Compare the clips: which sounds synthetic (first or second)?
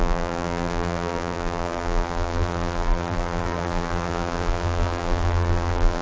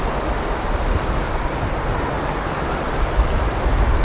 first